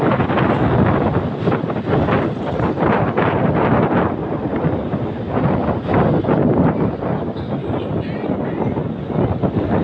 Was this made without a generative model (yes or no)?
yes